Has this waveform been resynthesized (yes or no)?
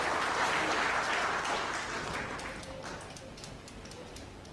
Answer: no